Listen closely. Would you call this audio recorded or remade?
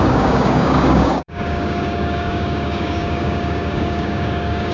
remade